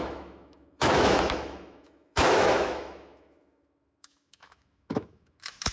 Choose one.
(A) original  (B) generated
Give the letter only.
B